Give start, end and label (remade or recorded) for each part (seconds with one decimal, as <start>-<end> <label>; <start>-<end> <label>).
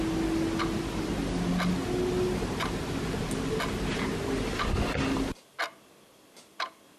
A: 0.0-1.8 recorded; 1.8-3.5 remade; 3.5-7.0 recorded